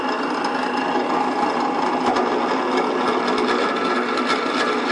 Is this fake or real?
real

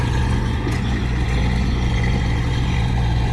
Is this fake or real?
fake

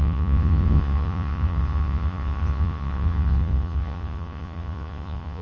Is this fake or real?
fake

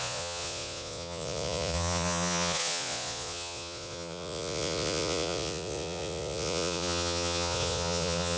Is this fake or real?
fake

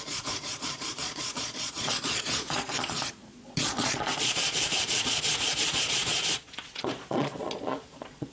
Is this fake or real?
fake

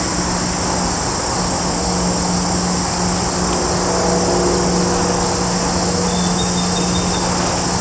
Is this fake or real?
real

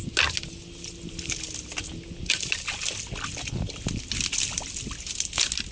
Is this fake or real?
real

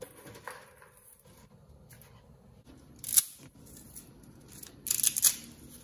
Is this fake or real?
real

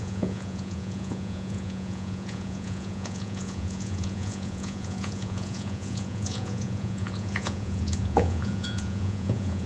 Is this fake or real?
fake